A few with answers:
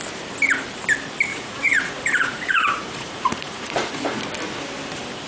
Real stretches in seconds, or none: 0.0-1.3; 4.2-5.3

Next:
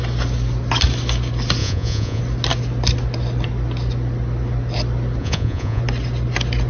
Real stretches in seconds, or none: 0.0-1.6; 2.2-5.2; 5.8-6.7

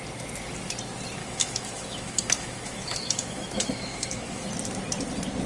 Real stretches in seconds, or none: 0.0-1.2; 4.5-5.5

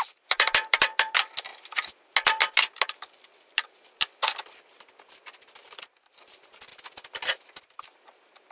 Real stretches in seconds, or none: 0.0-8.5

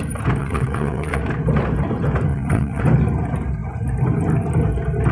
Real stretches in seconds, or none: 0.0-0.4; 1.2-2.3; 2.8-5.1

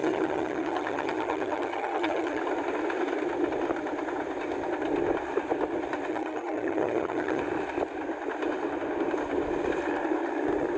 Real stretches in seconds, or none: 2.4-6.1; 7.4-10.8

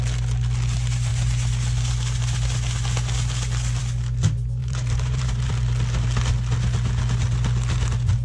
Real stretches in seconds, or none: 0.0-4.6; 5.5-8.2